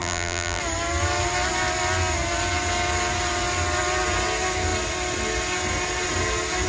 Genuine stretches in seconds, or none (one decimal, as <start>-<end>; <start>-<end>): 0.6-6.7